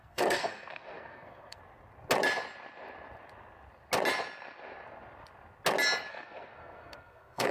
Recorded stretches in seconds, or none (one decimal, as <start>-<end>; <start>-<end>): 1.6-6.1